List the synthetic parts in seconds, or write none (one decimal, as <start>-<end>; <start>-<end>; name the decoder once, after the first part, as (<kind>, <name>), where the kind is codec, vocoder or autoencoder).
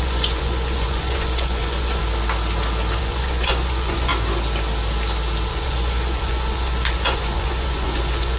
0.0-2.0 (vocoder, Vocos); 3.0-4.1; 5.5-8.4